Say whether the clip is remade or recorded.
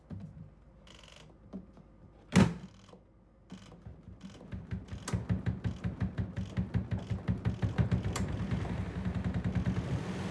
recorded